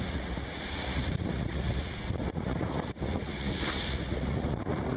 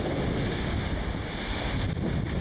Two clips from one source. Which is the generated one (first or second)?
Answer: first